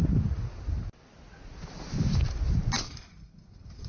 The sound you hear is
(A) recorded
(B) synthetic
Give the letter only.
A